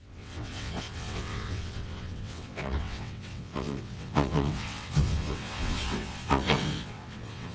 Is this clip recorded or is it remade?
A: remade